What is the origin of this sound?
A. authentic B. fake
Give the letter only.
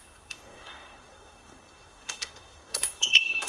B